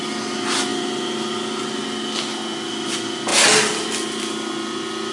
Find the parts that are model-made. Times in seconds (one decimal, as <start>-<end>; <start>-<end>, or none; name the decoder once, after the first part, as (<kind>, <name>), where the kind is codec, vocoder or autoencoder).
0.7-1.8 (vocoder, BigVGAN v2); 3.3-4.5